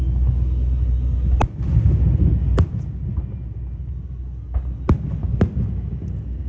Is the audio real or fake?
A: real